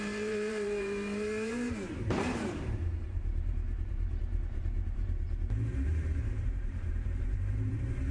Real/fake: fake